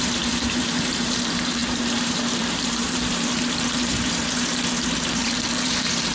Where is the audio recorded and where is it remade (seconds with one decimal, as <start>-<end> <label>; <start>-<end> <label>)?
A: 0.0-6.1 remade